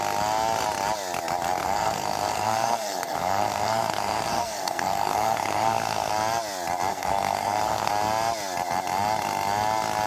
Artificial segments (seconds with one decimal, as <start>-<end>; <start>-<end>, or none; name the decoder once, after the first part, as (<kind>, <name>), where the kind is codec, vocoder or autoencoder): 1.6-6.1 (codec, SNAC); 6.9-7.9